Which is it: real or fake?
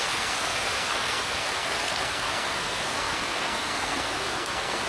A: fake